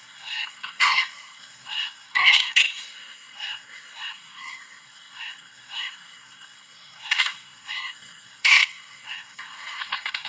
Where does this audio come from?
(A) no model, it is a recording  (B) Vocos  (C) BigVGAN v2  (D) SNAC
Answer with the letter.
D